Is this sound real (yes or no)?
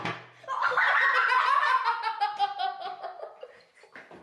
yes